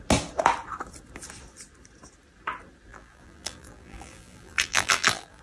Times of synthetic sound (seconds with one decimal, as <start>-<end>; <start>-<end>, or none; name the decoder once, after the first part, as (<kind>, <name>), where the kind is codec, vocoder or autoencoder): 2.9-5.4 (vocoder, BigVGAN v2)